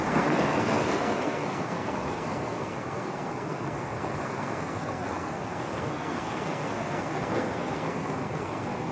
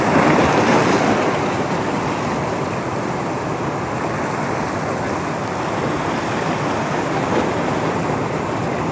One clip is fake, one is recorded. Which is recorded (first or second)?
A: second